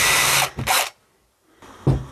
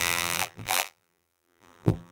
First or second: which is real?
first